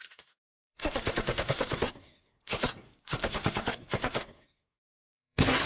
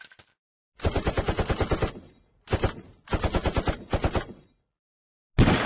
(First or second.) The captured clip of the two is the second